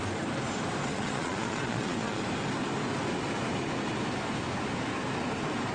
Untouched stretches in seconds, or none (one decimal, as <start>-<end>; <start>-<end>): 0.0-0.9; 2.2-5.7